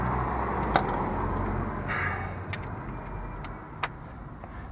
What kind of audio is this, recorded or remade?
recorded